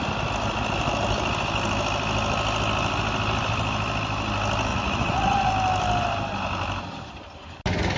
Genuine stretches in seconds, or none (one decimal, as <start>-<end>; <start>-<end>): 0.0-4.7; 5.5-8.0